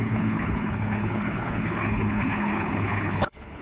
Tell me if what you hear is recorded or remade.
remade